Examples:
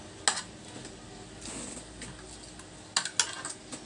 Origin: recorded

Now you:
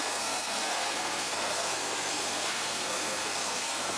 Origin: remade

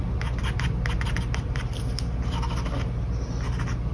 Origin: recorded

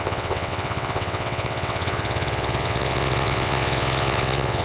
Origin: remade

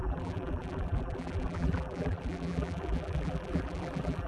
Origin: remade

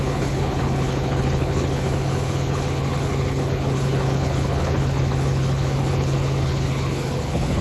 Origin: remade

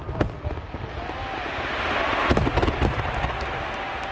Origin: recorded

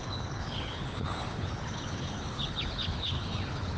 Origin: remade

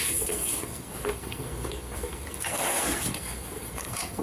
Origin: remade